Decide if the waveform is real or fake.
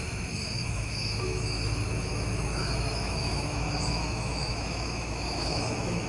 fake